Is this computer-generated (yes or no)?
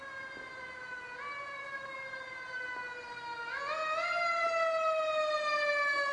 no